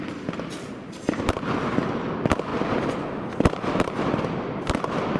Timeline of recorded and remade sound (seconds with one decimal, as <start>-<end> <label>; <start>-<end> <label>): 0.0-2.5 recorded; 2.5-3.3 remade; 3.3-5.2 recorded